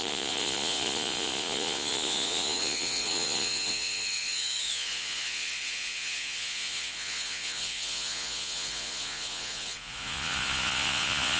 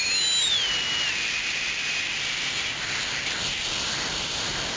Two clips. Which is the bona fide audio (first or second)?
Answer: second